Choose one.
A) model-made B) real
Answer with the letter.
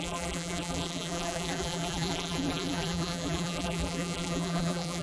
A